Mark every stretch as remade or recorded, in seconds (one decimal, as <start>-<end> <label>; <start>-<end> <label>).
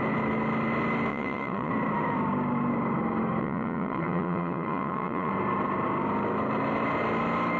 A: 0.0-1.1 recorded; 1.1-1.7 remade; 1.7-3.4 recorded; 3.4-5.3 remade; 5.3-7.6 recorded